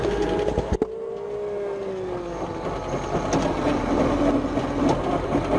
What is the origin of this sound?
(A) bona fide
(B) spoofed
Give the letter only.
A